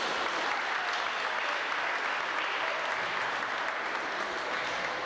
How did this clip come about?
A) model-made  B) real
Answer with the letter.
B